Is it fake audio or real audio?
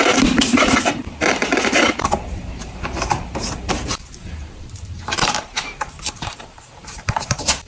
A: fake